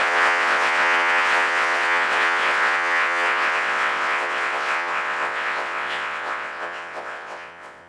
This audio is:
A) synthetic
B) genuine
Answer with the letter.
A